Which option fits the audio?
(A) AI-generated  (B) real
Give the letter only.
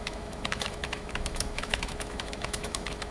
A